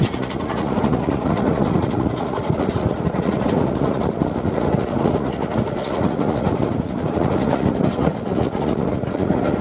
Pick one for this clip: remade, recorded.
remade